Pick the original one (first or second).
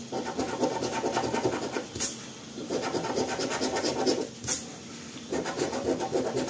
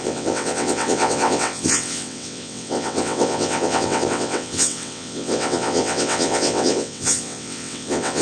first